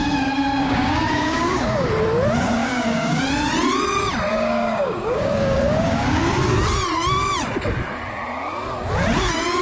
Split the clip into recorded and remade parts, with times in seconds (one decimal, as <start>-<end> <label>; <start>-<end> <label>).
0.0-1.9 remade; 1.9-2.6 recorded; 2.6-3.2 remade; 3.2-4.3 recorded; 4.3-6.2 remade; 6.2-9.6 recorded